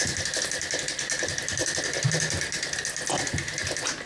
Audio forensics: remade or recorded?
recorded